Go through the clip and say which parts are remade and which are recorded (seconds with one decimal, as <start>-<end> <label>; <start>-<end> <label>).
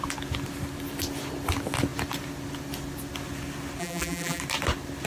0.0-3.8 recorded; 3.8-4.4 remade; 4.4-5.1 recorded